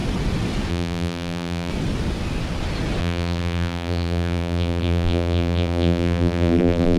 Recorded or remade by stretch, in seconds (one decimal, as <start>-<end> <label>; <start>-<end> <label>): 0.0-0.7 recorded; 0.7-1.7 remade; 1.7-3.0 recorded; 3.0-7.0 remade